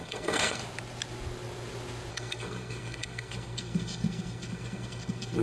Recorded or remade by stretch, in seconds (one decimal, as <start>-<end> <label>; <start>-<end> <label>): 0.0-0.6 remade; 0.6-2.1 recorded; 2.1-5.4 remade